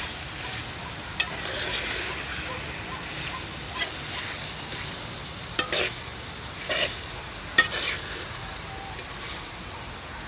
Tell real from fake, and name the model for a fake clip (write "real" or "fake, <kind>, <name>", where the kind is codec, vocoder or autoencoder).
real